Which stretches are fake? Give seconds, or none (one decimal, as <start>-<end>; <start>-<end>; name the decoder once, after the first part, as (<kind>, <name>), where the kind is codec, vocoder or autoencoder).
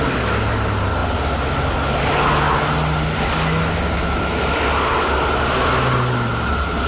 none